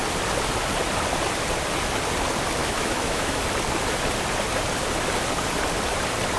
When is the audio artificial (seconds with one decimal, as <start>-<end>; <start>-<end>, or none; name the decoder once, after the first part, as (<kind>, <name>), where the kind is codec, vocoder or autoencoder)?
2.6-3.4 (autoencoder, DAC-VAE)